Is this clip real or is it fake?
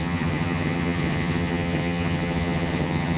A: fake